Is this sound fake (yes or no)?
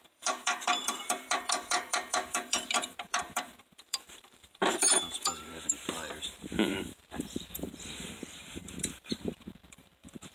yes